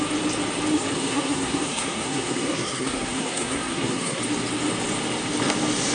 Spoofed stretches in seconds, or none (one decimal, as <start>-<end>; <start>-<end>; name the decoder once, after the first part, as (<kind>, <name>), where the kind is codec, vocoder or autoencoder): 0.7-4.2 (codec, SNAC)